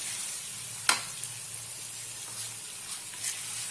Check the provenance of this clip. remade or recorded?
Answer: recorded